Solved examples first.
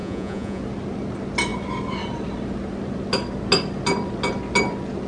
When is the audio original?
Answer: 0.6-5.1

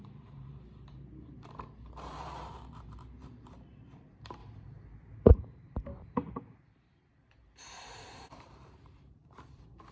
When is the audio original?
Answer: 4.4-5.3; 5.9-6.8